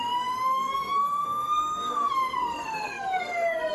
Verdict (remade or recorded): remade